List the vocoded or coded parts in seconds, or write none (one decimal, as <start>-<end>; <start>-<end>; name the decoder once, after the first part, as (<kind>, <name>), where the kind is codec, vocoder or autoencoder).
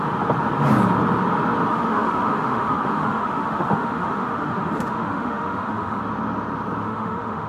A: 1.7-6.0 (autoencoder, DAC-VAE); 6.8-7.5